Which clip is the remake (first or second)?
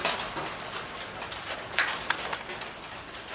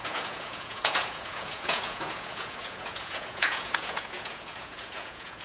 second